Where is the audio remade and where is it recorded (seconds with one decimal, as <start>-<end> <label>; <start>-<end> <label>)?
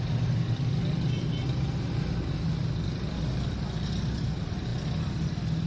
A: 0.0-5.7 recorded